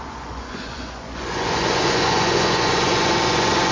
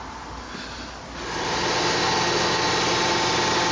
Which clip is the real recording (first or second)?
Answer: second